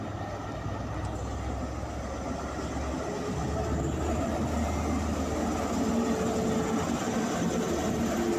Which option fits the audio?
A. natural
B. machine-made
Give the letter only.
A